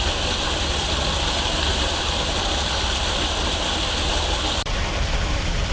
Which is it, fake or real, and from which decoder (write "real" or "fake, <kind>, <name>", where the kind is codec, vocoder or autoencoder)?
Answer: real